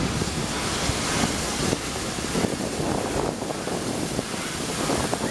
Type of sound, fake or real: real